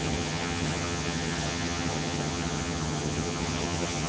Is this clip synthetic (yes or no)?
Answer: yes